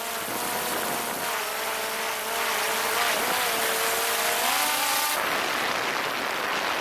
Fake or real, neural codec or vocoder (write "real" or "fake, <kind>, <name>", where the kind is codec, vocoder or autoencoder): real